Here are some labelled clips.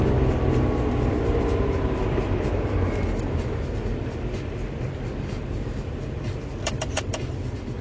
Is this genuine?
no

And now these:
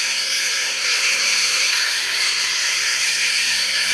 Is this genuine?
no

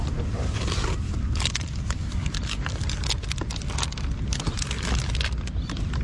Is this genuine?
yes